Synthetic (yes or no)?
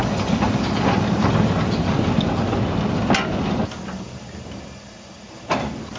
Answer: no